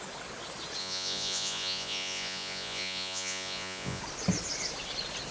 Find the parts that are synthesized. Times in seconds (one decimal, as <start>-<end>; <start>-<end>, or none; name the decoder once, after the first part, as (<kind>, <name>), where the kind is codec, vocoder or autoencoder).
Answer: 0.8-4.0 (vocoder, Vocos)